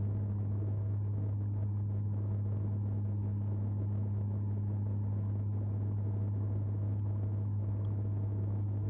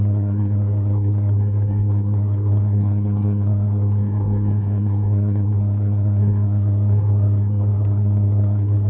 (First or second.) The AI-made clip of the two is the second